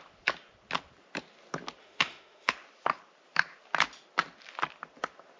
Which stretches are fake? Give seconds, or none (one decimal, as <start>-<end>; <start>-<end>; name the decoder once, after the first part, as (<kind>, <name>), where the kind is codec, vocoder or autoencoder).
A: 1.8-2.5 (autoencoder, DAC-VAE)